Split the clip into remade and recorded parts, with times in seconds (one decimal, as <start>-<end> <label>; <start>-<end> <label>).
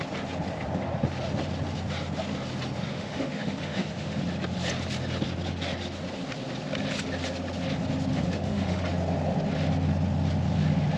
0.0-2.9 recorded; 2.9-4.2 remade; 4.2-8.1 recorded; 8.1-8.8 remade; 8.8-11.0 recorded